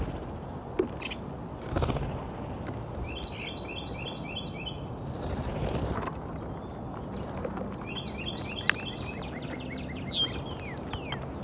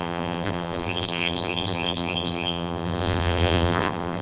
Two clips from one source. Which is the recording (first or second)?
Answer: first